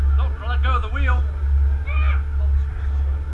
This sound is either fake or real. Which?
real